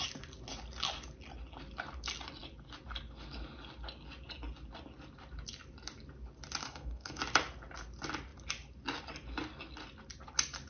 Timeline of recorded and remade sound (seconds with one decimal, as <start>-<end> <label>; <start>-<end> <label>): 0.0-6.6 recorded; 6.6-7.2 remade; 7.2-10.7 recorded